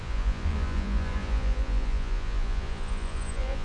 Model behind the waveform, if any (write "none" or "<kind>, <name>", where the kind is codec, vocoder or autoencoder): vocoder, Vocos